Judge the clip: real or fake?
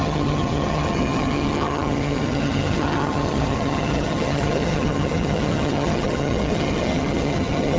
fake